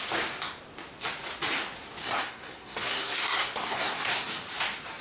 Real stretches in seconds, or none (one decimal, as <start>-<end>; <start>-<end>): 0.0-2.0; 4.3-5.0